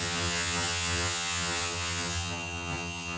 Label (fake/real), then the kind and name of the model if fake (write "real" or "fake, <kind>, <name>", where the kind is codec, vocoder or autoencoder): fake, vocoder, HiFi-GAN